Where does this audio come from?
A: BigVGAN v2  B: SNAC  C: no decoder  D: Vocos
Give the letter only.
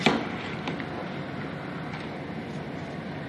C